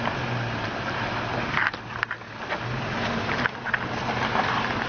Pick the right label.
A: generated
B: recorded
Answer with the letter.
B